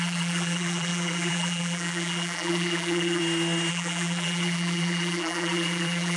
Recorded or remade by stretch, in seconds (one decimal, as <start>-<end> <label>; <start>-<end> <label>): 0.0-3.2 remade; 3.2-3.7 recorded; 3.7-6.2 remade